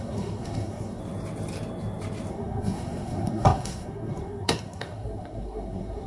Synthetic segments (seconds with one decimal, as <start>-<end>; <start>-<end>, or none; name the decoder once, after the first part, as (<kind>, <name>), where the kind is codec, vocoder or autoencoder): 0.0-1.0 (codec, SNAC); 2.3-6.1